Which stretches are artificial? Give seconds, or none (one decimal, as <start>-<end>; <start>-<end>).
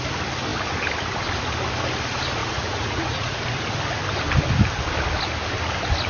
2.4-3.4